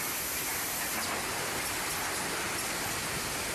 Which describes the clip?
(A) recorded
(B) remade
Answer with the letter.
A